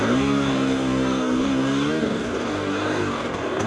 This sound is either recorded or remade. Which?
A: remade